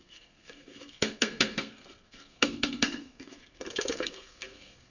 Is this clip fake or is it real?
fake